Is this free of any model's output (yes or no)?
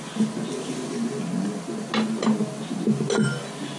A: yes